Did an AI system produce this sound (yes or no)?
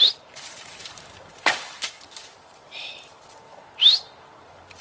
yes